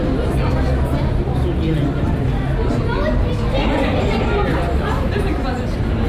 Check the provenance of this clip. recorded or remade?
recorded